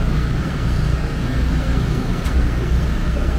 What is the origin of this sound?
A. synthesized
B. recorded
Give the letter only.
A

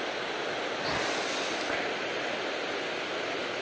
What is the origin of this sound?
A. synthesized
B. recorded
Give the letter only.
B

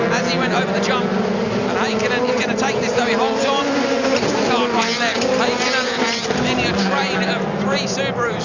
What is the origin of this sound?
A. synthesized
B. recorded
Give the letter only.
B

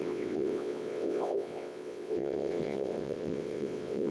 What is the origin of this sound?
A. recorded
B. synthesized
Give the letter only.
B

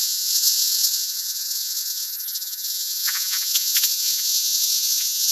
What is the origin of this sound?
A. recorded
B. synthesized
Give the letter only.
B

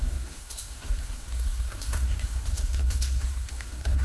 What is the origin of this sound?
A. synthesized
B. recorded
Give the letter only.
A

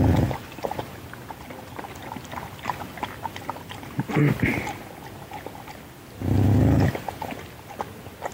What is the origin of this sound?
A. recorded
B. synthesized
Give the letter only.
A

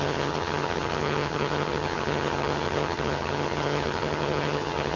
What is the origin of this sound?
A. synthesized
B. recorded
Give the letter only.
A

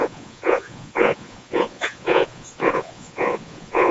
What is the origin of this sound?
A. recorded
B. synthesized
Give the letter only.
B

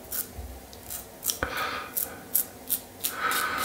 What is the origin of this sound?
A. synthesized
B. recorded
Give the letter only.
B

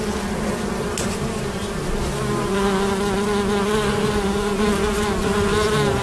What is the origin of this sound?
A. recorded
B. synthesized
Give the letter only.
A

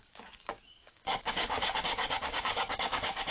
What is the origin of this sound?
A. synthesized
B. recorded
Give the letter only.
A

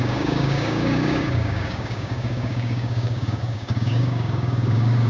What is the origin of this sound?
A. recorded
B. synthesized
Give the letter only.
B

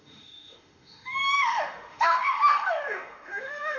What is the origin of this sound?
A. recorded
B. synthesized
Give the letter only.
B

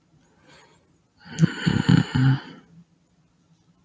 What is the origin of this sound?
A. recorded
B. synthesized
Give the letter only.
A